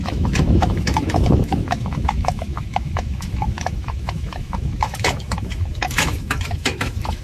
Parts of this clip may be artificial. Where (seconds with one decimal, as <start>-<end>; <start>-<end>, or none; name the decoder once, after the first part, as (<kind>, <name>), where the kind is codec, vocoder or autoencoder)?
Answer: 0.0-7.2 (autoencoder, DAC-VAE)